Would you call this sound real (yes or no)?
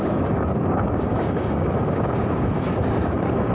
no